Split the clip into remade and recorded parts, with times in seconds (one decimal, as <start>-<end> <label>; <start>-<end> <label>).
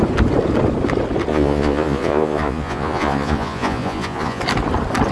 0.0-1.3 recorded; 1.3-4.4 remade; 4.4-5.1 recorded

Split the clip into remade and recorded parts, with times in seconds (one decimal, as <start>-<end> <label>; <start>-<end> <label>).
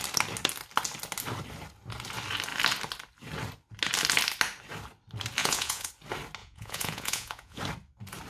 0.0-5.4 recorded; 5.4-5.9 remade; 5.9-6.4 recorded; 6.4-7.6 remade; 7.6-8.3 recorded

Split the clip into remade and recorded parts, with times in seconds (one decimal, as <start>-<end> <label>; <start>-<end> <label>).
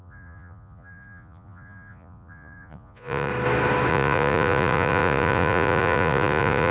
0.0-3.3 remade; 3.3-3.9 recorded; 3.9-6.7 remade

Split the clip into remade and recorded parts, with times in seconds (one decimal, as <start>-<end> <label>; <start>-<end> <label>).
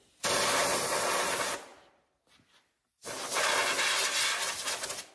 0.0-5.1 recorded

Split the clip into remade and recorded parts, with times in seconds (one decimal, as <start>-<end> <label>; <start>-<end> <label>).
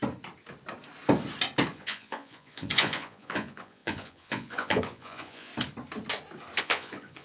0.0-1.7 recorded; 1.7-5.5 remade; 5.5-6.6 recorded; 6.6-7.2 remade